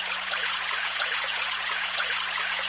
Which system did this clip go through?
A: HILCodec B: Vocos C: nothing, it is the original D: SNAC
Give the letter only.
B